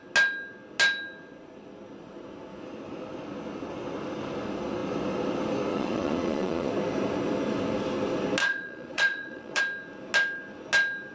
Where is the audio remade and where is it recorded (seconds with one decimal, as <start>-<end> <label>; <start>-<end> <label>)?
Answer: 0.0-5.7 recorded; 5.7-6.7 remade; 6.7-8.4 recorded; 8.4-9.6 remade; 9.6-11.1 recorded